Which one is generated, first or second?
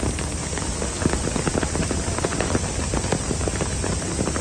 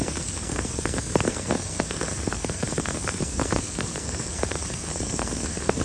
second